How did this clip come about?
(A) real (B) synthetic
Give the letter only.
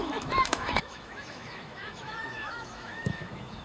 B